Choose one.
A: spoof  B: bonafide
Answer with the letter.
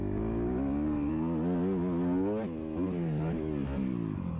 B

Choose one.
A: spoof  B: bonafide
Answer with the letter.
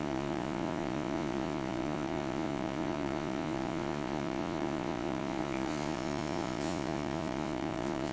A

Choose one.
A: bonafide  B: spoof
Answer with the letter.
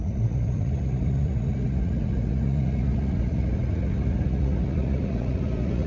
B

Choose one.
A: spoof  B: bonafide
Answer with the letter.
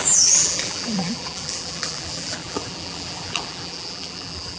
A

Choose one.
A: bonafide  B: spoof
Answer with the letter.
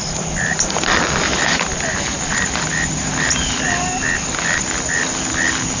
A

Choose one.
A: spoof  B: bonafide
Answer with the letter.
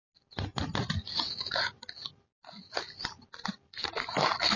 B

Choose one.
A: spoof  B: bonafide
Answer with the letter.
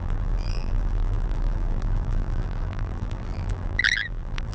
A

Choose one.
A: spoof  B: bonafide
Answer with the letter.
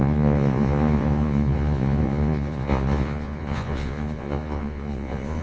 A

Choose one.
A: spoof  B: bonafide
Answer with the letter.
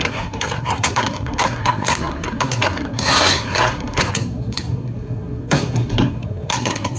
A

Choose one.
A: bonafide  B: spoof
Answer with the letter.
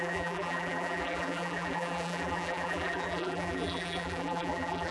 B